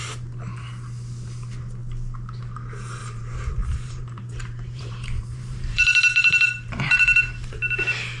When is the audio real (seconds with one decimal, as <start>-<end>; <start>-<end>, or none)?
0.0-3.0; 7.6-8.2